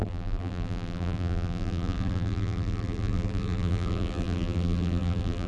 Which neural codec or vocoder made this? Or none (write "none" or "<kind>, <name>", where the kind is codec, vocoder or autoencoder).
vocoder, BigVGAN v2